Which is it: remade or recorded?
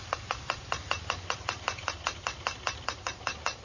remade